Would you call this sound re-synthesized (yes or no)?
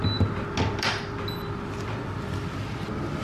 no